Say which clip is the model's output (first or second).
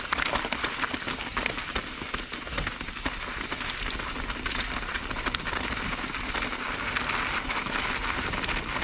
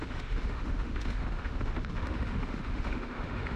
second